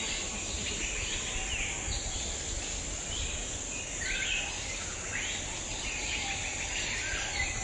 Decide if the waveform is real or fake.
real